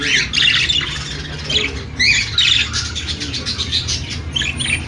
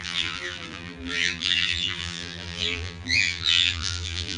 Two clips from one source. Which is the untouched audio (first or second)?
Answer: first